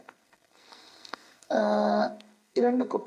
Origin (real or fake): fake